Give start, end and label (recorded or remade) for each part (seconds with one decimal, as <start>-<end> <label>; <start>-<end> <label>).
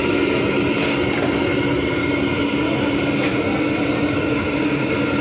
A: 0.0-1.5 recorded; 1.5-2.4 remade; 2.4-5.2 recorded